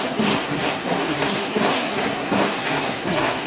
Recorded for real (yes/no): no